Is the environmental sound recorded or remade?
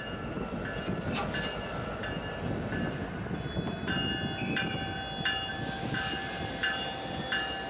recorded